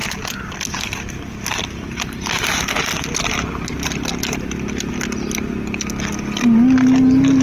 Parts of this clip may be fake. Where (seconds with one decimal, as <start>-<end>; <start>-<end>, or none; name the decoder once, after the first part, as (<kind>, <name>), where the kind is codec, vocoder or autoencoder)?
none